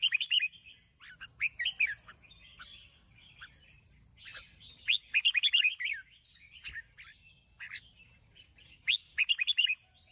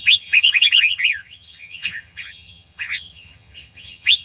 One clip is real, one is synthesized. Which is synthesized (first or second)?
second